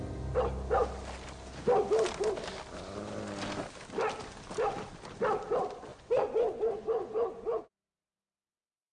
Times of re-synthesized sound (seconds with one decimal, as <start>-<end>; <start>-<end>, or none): 5.9-7.7